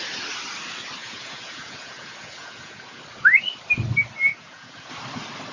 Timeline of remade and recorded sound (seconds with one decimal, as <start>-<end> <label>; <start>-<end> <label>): 0.0-1.0 recorded; 1.0-3.0 remade; 3.0-4.3 recorded; 4.3-4.9 remade; 4.9-5.5 recorded